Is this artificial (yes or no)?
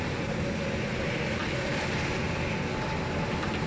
no